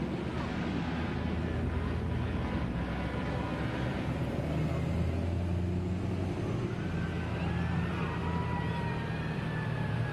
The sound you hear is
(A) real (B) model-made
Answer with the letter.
A